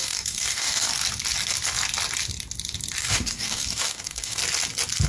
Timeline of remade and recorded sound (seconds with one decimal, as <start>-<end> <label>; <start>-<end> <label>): 0.0-0.9 remade; 0.9-3.0 recorded; 3.0-4.4 remade; 4.4-5.1 recorded